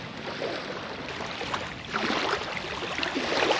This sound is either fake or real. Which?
real